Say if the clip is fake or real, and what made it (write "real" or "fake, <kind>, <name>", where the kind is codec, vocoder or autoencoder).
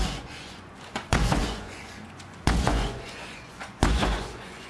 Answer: fake, vocoder, Vocos